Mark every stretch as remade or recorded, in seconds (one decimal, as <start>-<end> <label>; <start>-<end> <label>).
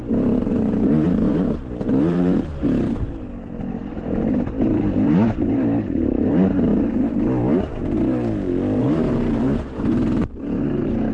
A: 0.0-6.7 remade; 6.7-8.8 recorded; 8.8-11.1 remade